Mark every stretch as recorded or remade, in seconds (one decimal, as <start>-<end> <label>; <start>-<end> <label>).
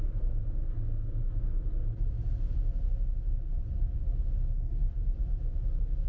0.0-3.5 recorded; 3.5-4.2 remade; 4.2-4.8 recorded; 4.8-5.3 remade; 5.3-6.1 recorded